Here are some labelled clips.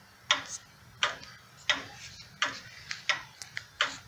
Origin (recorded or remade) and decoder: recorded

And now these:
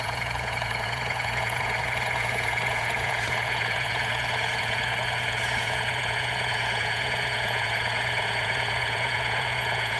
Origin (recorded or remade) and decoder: remade, vocoder, Vocos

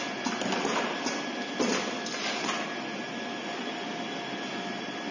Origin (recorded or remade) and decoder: recorded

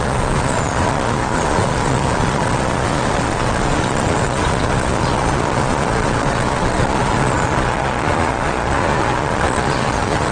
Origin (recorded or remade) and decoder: remade, vocoder, Vocos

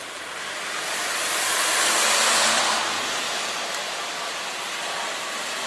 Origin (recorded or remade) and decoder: recorded